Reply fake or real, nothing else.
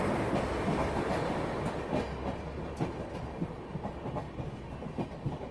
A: real